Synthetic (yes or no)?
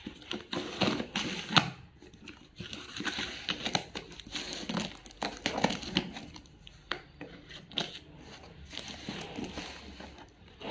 no